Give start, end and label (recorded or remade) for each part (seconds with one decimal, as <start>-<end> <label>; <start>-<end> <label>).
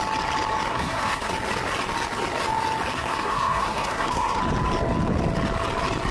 0.0-0.7 recorded; 0.7-1.3 remade; 1.3-2.9 recorded; 2.9-4.4 remade; 4.4-6.1 recorded